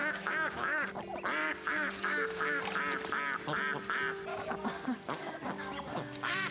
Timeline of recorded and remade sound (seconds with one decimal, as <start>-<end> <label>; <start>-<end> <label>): 0.0-0.9 remade; 0.9-1.4 recorded; 1.4-2.6 remade; 2.6-4.3 recorded; 4.3-6.5 remade